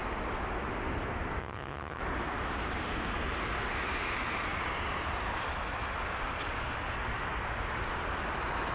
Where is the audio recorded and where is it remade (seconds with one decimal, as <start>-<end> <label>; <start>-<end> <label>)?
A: 0.0-1.4 recorded; 1.4-2.0 remade; 2.0-8.7 recorded